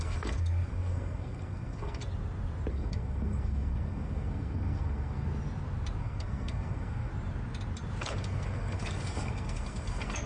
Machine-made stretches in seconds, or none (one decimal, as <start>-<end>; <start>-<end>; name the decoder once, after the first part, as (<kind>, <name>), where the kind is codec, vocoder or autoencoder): 0.0-2.0 (codec, SNAC); 2.7-5.3; 6.0-7.1; 8.0-10.3